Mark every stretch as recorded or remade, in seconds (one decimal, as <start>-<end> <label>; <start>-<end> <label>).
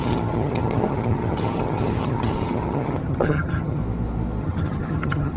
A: 0.0-3.8 remade; 3.8-4.4 recorded; 4.4-5.4 remade